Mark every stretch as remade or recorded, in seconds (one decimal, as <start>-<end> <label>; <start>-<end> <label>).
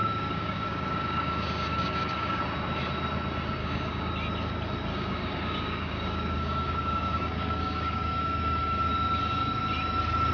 0.0-2.4 remade; 2.4-3.6 recorded; 3.6-4.1 remade; 4.1-4.9 recorded; 4.9-8.9 remade; 8.9-10.3 recorded